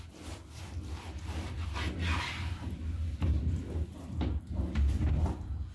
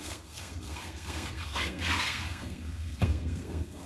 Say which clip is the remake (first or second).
second